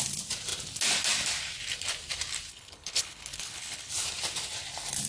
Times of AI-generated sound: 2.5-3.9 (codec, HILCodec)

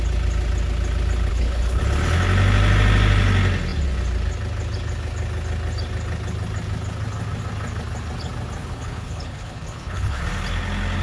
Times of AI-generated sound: 1.3-1.8 (codec, HILCodec); 8.6-10.2

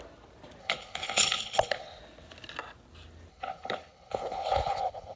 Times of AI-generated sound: 0.6-2.0 (codec, HILCodec); 3.3-5.2

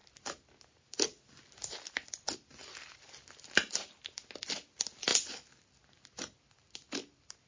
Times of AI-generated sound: none

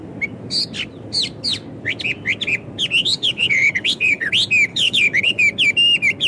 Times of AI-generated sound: 3.0-4.3 (codec, HILCodec); 4.7-5.4

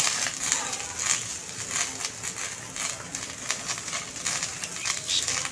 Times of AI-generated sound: none